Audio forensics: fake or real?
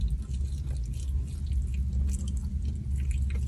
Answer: real